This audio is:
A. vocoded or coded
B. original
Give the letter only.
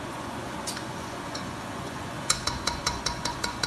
A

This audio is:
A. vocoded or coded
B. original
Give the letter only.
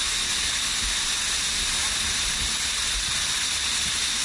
B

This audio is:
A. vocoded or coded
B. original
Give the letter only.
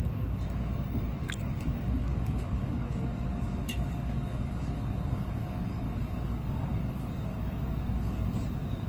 A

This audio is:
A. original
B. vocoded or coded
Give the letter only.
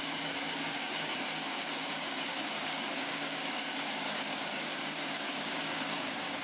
B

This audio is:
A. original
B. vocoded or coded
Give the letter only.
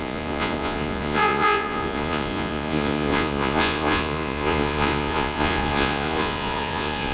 B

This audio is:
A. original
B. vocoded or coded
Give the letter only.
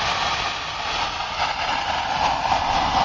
A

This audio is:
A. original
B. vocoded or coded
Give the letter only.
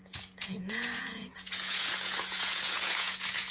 B